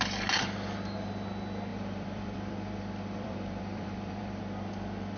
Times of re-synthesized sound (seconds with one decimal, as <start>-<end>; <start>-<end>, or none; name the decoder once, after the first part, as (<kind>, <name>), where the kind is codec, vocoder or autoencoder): 1.7-4.4 (vocoder, BigVGAN v2)